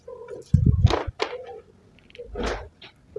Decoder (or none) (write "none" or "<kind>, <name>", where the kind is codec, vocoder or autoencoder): none